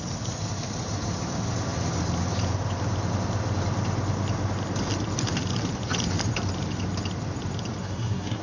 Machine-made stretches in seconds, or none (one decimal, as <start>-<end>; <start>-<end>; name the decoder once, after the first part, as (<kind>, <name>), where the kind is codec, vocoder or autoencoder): 7.8-8.4 (codec, SNAC)